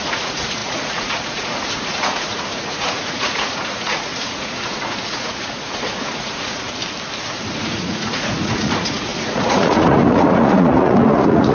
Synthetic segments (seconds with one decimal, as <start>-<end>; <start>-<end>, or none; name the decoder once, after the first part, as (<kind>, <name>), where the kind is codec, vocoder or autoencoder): 0.0-6.8 (vocoder, Vocos); 7.5-11.5